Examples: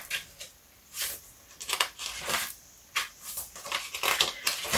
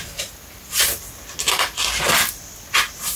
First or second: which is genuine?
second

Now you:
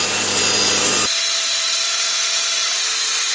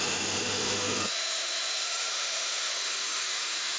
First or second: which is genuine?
first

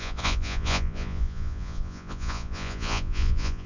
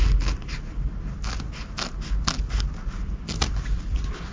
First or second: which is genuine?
second